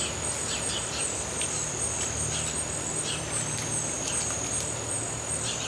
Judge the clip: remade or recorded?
recorded